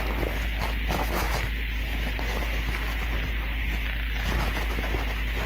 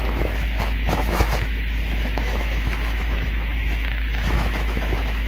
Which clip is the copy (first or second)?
second